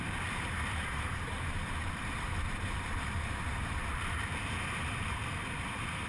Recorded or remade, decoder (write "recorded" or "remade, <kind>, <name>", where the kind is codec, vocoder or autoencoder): remade, vocoder, BigVGAN v2